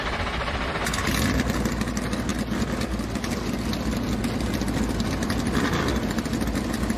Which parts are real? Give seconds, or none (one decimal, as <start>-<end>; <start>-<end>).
0.0-7.0